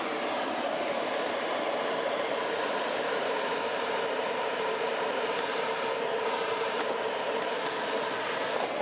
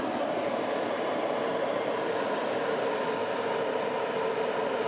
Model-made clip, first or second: first